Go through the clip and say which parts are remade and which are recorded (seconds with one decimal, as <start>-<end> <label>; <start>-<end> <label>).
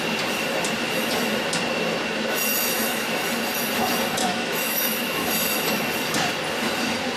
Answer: 0.0-2.6 recorded; 2.6-3.2 remade; 3.2-4.2 recorded; 4.2-5.3 remade; 5.3-7.2 recorded